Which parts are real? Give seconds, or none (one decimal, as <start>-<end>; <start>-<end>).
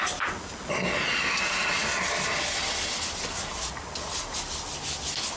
0.0-5.4